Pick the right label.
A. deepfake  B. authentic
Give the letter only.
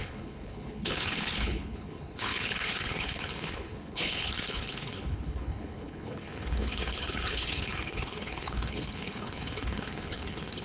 A